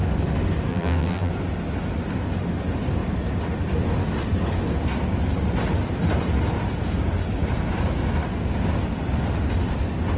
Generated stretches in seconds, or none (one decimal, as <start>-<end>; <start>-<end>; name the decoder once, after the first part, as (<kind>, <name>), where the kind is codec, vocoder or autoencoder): 0.7-1.3 (vocoder, BigVGAN v2)